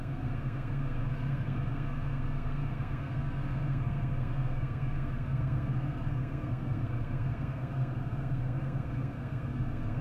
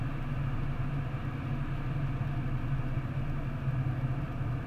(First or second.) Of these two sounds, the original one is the second